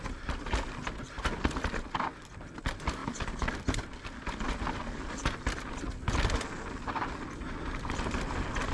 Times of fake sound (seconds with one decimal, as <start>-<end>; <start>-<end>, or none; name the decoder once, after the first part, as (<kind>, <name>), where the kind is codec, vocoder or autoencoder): none